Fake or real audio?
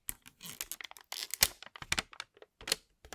real